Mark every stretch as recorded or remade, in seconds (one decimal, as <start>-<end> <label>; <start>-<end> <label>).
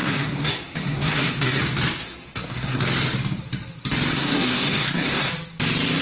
0.0-1.6 remade; 1.6-2.0 recorded; 2.0-2.8 remade; 2.8-4.1 recorded; 4.1-5.3 remade; 5.3-6.0 recorded